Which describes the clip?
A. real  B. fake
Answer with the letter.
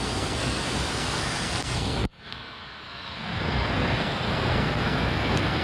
B